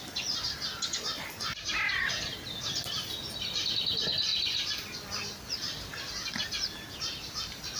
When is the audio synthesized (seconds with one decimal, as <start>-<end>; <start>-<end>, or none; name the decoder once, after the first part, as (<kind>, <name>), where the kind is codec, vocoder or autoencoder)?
none